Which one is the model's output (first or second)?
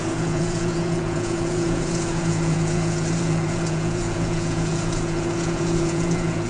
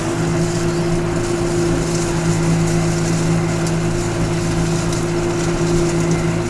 first